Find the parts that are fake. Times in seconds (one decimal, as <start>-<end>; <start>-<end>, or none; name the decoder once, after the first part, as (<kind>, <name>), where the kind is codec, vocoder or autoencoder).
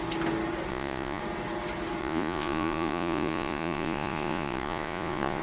0.7-1.2 (vocoder, Vocos); 2.0-5.4